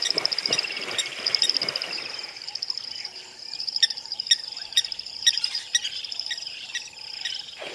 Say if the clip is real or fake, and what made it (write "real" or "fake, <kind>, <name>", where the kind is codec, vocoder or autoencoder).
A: fake, vocoder, BigVGAN v2